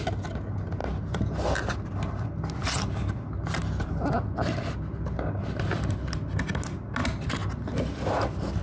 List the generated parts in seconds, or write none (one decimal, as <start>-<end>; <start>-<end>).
7.4-8.6